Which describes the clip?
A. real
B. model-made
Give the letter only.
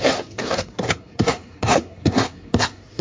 B